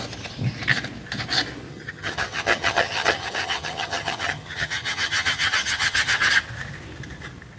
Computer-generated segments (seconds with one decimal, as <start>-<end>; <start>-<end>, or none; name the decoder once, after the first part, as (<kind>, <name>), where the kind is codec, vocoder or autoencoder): 1.7-6.3 (vocoder, HiFi-GAN)